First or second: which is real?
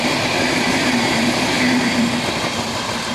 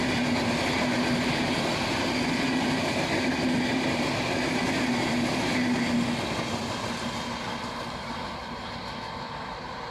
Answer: second